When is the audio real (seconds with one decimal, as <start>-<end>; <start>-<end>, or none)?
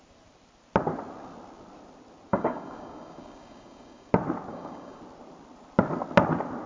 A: 0.0-2.3; 4.1-4.5; 5.0-6.7